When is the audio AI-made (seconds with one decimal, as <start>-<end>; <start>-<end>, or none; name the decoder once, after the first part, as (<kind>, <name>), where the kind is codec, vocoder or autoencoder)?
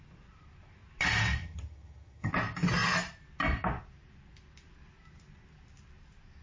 1.4-2.3 (vocoder, HiFi-GAN)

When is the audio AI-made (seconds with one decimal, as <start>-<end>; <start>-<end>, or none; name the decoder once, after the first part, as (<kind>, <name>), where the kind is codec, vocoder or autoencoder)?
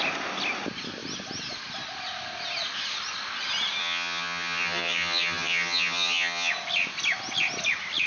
3.8-6.5 (vocoder, HiFi-GAN)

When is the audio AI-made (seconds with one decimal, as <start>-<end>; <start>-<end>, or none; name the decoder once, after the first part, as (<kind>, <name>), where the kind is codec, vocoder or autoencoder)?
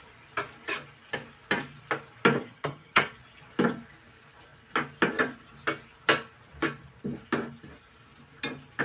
2.4-3.1 (vocoder, HiFi-GAN)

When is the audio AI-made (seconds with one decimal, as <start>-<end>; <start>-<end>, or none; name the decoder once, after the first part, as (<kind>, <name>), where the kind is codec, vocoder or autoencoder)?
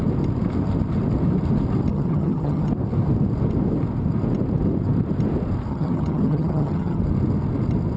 1.9-2.7 (vocoder, HiFi-GAN); 5.7-7.0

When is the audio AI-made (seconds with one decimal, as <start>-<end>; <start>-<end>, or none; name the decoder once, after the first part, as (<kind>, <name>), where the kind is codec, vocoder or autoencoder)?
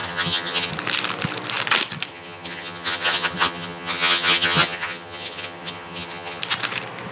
0.0-0.7 (vocoder, HiFi-GAN); 2.1-6.4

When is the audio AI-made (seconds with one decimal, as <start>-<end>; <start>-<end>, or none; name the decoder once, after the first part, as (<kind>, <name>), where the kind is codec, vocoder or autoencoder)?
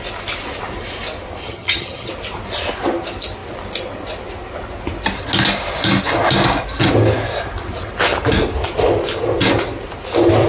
1.4-2.1 (vocoder, HiFi-GAN)